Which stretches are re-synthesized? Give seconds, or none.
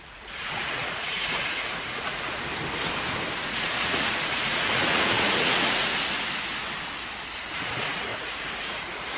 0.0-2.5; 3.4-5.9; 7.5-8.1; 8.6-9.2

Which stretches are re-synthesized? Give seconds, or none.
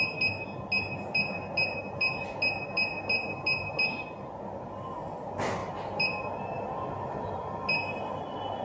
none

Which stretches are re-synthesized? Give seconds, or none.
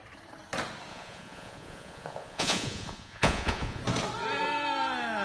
0.9-3.8